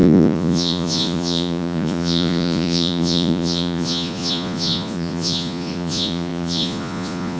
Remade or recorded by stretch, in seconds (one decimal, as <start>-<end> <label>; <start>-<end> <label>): 0.0-7.4 remade